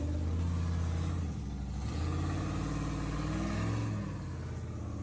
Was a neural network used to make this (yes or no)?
no